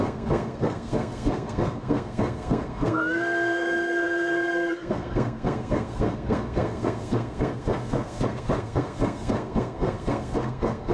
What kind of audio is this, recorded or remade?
remade